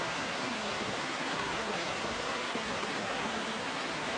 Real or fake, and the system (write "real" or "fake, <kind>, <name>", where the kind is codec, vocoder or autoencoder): fake, codec, SNAC